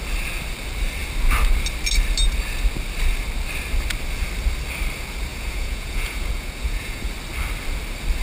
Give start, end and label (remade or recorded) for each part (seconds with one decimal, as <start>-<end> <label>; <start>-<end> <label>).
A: 0.0-5.3 recorded; 5.3-7.1 remade; 7.1-8.2 recorded